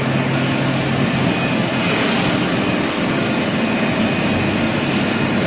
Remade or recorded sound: recorded